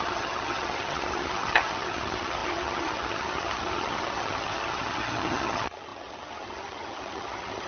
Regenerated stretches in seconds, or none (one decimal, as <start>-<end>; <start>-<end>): 0.0-7.7